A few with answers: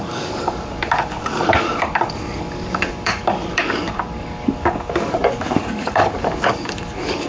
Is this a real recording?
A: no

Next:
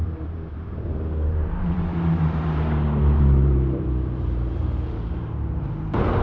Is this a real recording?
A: no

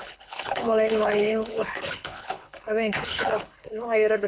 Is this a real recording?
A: no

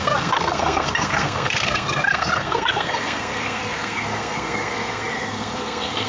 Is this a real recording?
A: no